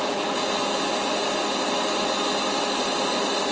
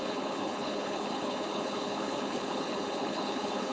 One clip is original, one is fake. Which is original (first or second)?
first